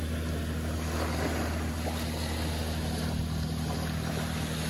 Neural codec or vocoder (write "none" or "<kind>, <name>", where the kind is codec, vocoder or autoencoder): none